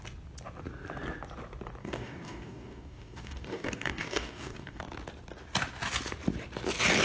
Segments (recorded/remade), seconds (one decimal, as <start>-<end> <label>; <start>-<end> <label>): 0.0-1.8 recorded; 1.8-4.8 remade; 4.8-7.0 recorded